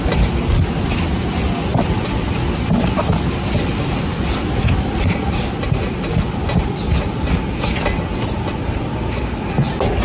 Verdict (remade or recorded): recorded